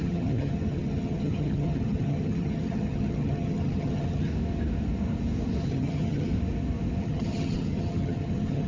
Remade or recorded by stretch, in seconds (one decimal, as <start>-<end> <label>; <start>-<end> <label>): 0.0-4.3 remade; 4.3-5.6 recorded; 5.6-6.3 remade; 6.3-7.0 recorded; 7.0-8.7 remade